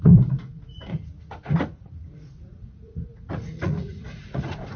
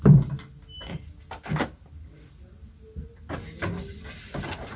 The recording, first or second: second